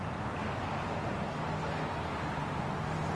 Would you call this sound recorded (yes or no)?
yes